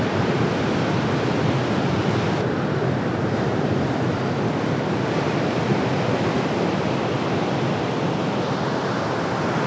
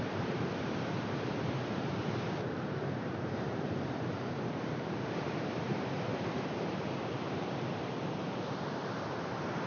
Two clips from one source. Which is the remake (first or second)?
second